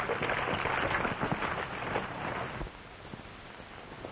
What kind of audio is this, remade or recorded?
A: recorded